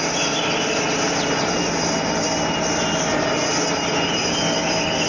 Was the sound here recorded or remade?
recorded